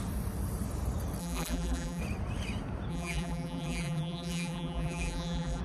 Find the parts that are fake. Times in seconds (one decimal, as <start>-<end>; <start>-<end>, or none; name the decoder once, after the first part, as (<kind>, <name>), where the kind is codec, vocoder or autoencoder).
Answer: 1.2-2.0 (vocoder, BigVGAN v2); 2.9-5.6